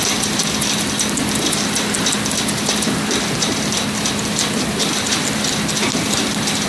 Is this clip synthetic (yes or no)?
yes